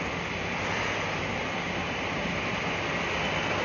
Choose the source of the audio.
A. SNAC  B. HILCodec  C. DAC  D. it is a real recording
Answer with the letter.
D